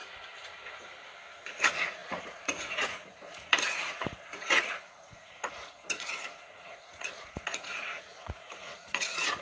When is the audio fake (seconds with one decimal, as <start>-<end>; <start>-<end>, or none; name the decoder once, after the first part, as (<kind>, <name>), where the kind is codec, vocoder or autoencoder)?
1.6-9.4 (vocoder, Vocos)